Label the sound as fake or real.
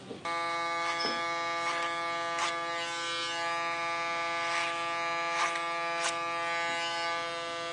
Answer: real